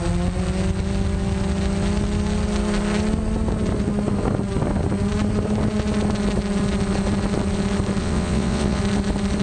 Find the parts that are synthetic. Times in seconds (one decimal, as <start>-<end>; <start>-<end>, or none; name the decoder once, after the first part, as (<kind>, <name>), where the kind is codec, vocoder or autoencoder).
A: 8.0-8.8 (vocoder, WaveNeXt)